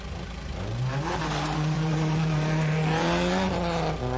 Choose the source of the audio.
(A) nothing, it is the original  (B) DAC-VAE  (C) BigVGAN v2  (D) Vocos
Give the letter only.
C